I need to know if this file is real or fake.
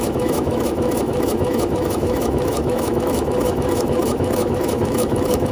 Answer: fake